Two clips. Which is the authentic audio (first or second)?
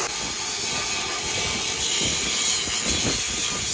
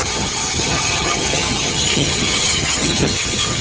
first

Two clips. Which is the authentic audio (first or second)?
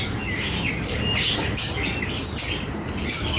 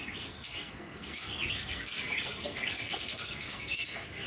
first